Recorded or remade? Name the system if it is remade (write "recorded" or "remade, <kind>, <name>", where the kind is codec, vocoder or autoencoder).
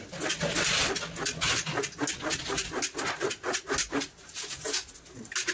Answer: recorded